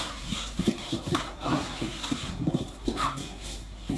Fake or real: fake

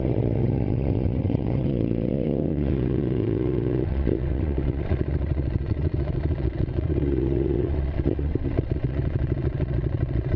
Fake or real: fake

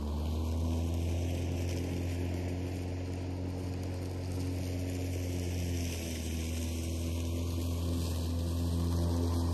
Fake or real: real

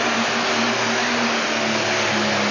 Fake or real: real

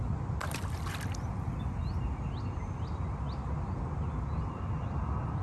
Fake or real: real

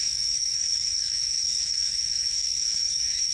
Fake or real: fake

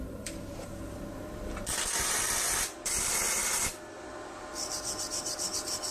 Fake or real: real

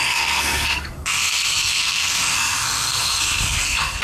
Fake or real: fake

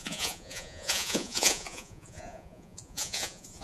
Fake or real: fake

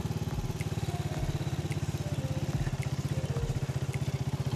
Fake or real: real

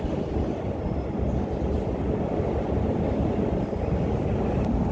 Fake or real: real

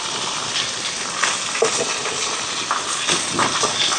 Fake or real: real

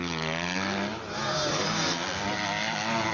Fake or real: real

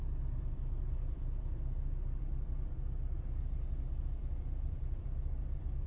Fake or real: fake